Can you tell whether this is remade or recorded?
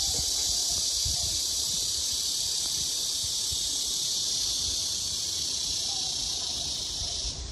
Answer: remade